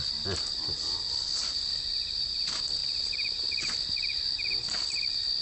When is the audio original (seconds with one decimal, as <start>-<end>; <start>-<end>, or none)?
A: 0.0-5.4